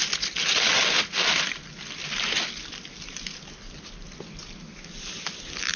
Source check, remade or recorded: recorded